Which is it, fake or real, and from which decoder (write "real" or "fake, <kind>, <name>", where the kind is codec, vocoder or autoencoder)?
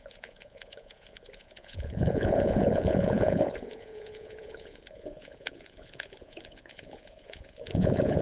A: fake, vocoder, Vocos